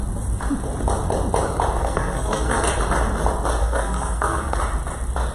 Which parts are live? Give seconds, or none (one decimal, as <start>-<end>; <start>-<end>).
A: 0.0-1.8; 2.7-3.6; 4.6-5.3